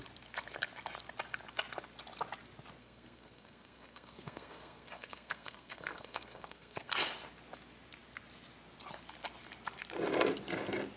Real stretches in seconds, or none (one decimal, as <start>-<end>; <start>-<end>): 0.0-2.8; 6.9-11.0